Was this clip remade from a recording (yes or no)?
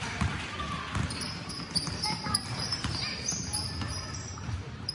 yes